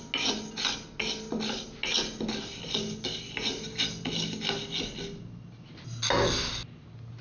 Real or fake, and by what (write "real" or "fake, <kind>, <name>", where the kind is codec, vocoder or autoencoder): real